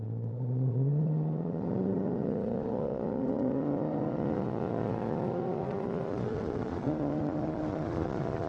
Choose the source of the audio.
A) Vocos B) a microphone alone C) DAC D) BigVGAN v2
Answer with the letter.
A